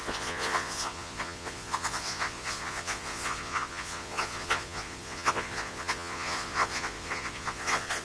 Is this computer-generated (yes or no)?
yes